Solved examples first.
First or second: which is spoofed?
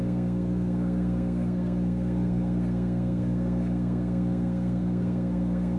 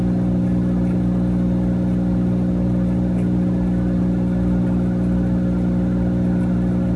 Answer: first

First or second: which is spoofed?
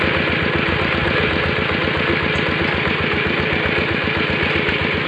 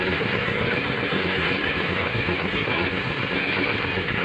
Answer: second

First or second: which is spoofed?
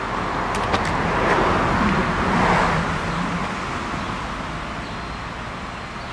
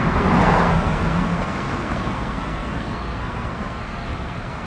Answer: second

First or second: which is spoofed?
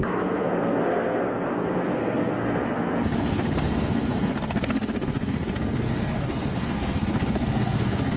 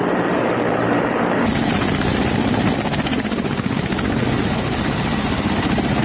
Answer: first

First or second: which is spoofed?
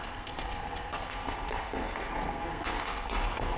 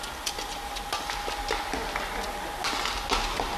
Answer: first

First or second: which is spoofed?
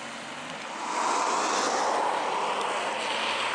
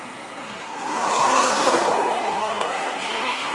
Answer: second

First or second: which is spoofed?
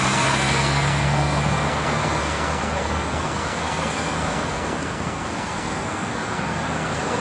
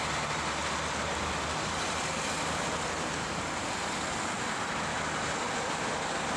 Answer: first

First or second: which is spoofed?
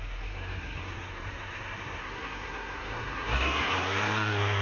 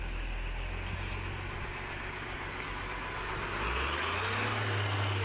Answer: first